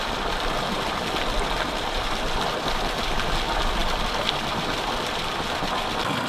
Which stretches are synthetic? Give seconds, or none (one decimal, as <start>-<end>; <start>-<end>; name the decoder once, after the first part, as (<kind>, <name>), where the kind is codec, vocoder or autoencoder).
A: 0.0-6.3 (vocoder, BigVGAN v2)